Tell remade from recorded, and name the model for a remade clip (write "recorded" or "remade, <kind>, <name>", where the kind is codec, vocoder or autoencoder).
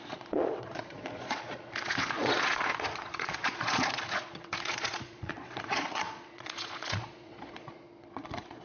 remade, vocoder, Vocos